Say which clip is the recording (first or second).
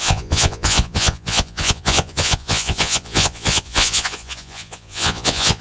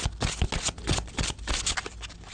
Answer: second